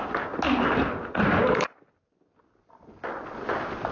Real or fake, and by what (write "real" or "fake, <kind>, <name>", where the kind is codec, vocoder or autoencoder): real